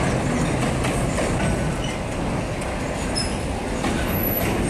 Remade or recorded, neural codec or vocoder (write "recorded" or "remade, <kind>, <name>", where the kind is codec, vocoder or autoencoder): recorded